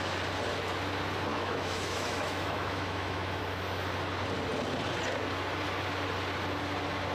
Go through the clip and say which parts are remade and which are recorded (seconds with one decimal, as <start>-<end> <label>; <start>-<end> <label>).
0.0-1.3 recorded; 1.3-3.4 remade; 3.4-7.1 recorded